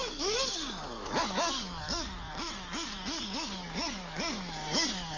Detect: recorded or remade remade